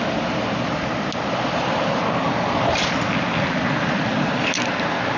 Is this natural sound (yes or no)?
yes